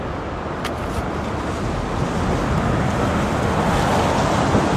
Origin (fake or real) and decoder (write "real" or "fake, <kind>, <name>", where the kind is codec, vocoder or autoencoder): real